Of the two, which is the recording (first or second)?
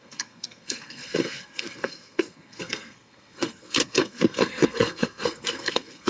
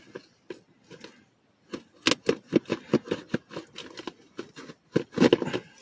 second